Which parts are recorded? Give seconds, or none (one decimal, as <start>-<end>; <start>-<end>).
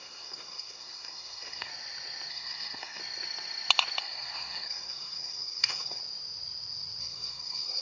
1.7-2.3; 3.0-4.0; 6.0-7.0